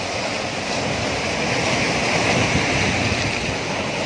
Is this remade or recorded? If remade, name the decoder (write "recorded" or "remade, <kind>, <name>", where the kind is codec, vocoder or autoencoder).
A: recorded